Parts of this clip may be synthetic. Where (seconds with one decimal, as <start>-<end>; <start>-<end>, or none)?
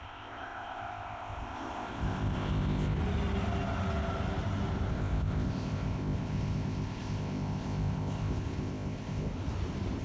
0.0-3.0; 4.9-9.3